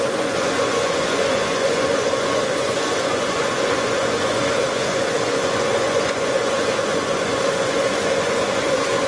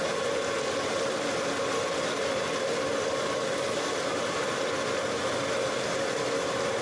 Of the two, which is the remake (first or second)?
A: first